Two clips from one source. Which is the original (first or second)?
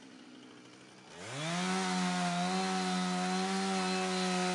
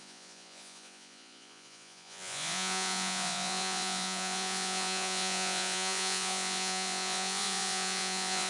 first